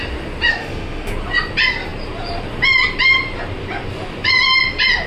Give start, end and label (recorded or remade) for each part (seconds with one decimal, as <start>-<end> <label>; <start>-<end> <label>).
0.0-0.5 recorded; 0.5-1.1 remade; 1.1-5.1 recorded